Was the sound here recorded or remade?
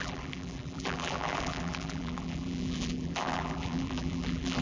remade